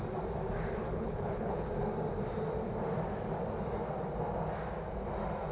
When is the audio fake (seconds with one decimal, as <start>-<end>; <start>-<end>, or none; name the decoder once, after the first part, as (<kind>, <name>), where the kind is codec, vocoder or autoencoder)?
0.8-1.7 (codec, HILCodec)